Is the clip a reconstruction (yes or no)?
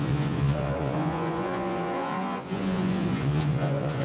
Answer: yes